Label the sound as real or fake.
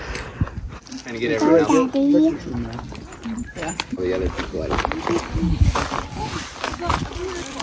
real